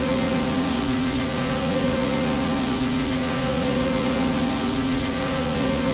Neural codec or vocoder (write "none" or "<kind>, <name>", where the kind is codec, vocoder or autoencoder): vocoder, Vocos